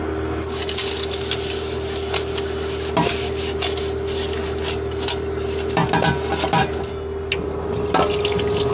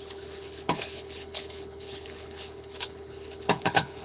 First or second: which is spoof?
second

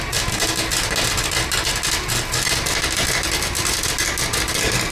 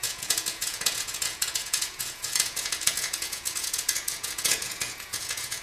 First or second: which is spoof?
second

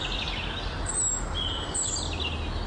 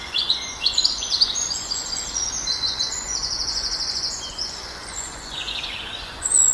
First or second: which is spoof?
second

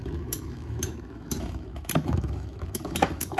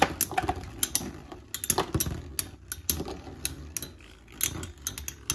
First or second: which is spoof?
first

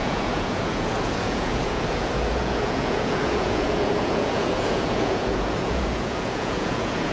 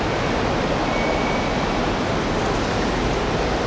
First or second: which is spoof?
first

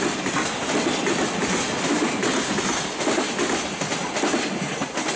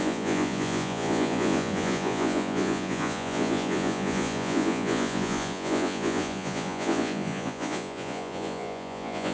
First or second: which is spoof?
second